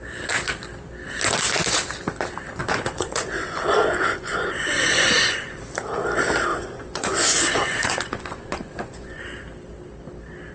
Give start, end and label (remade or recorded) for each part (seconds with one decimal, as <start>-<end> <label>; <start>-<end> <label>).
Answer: 0.0-2.6 recorded; 2.6-5.6 remade; 5.6-6.5 recorded; 6.5-9.2 remade; 9.2-10.5 recorded